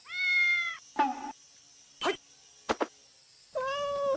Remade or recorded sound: recorded